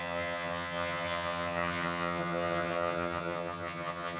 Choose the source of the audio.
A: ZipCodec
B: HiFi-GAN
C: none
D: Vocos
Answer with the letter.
B